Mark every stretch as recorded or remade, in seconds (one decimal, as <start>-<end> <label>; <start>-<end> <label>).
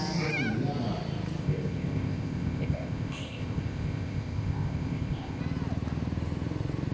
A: 0.0-1.4 recorded; 1.4-5.4 remade; 5.4-6.9 recorded